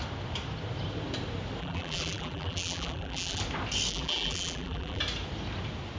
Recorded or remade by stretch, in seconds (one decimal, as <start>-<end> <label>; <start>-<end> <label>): 0.0-1.6 recorded; 1.6-3.4 remade; 3.4-3.9 recorded; 3.9-5.0 remade; 5.0-6.0 recorded